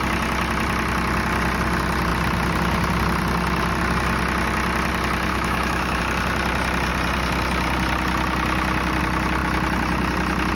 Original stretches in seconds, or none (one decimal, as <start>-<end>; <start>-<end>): 0.0-5.3; 6.0-10.5